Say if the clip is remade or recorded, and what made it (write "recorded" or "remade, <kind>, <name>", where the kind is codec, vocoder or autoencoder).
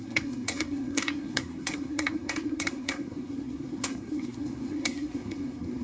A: remade, codec, SNAC